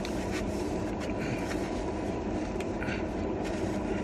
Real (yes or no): yes